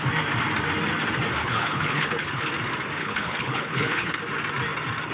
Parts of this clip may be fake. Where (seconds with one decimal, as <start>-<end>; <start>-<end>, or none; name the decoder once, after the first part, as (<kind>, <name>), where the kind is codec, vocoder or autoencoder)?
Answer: 1.4-2.5 (codec, HILCodec); 3.0-4.2